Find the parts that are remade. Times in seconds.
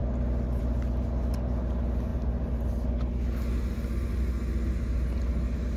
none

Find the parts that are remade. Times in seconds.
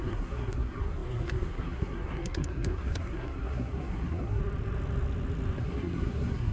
0.0-4.4; 5.6-6.5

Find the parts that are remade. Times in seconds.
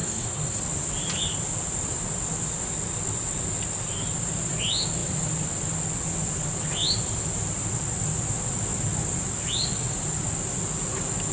0.0-0.6